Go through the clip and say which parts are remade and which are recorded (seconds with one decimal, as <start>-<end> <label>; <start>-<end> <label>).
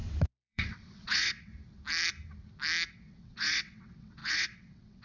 0.0-1.5 remade; 1.5-2.9 recorded; 2.9-5.0 remade